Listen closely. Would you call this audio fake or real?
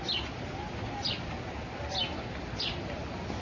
real